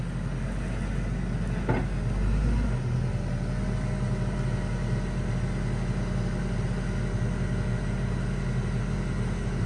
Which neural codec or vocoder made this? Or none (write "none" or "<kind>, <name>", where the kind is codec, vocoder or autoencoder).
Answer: none